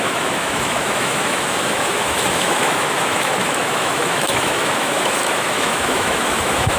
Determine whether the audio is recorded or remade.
remade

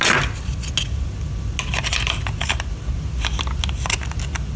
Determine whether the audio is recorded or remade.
recorded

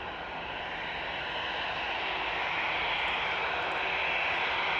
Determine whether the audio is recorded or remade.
recorded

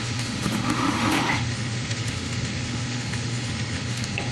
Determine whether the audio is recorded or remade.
remade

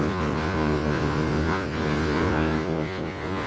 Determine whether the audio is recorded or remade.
remade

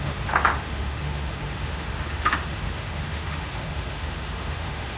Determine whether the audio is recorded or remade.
remade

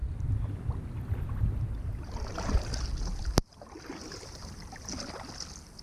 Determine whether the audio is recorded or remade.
recorded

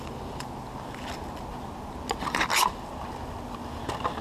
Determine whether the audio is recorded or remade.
recorded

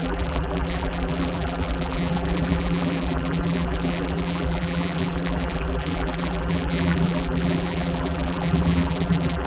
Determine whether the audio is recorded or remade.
remade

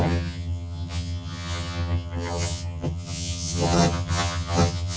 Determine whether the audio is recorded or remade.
remade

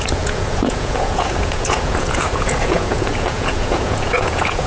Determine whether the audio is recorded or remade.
remade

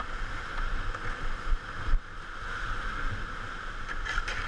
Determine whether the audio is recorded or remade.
recorded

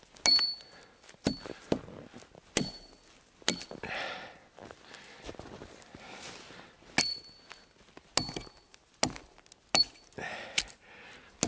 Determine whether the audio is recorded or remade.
recorded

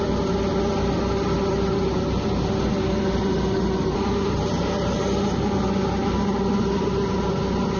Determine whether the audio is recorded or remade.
recorded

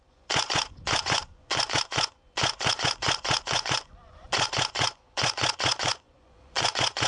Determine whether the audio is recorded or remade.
remade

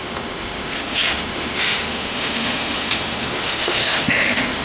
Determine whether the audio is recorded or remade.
remade